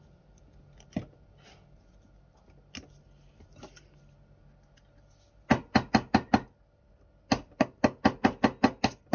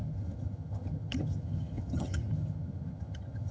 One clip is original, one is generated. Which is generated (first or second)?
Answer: second